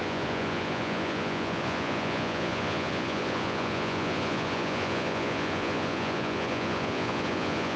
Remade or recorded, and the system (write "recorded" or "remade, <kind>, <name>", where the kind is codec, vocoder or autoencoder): remade, vocoder, Vocos